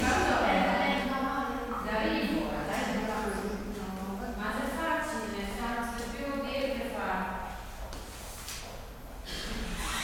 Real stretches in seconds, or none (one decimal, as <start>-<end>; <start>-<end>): 0.0-10.0

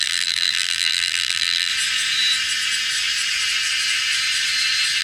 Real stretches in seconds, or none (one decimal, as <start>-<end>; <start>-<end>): 1.7-5.0

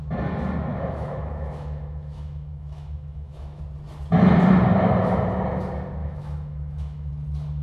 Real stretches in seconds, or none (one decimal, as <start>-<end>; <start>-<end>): 0.0-0.7; 3.6-6.0; 7.1-7.6

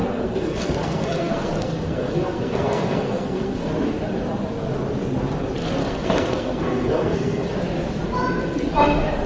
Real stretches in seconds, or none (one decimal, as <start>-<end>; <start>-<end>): 3.7-5.8; 7.5-9.3

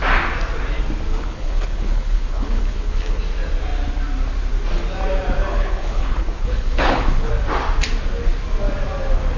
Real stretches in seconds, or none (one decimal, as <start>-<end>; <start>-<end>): 0.0-1.1; 3.2-5.5; 7.3-9.4

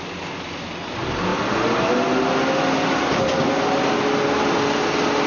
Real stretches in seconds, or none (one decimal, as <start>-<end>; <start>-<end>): 0.0-5.3

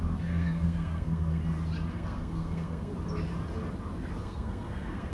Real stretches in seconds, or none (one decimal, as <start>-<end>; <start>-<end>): 1.4-1.9; 2.9-4.2